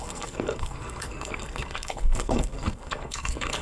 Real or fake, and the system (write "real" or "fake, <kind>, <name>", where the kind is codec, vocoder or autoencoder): fake, codec, SNAC